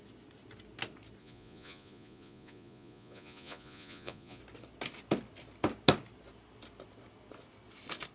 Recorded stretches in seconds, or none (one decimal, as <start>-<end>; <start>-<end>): 0.0-1.2; 4.4-8.1